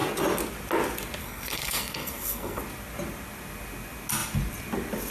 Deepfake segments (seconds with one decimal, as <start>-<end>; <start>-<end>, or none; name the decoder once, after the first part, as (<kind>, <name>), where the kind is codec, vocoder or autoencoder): 1.2-2.6 (codec, SNAC)